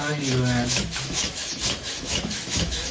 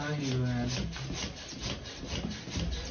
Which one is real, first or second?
second